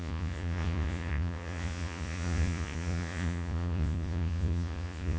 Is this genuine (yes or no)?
no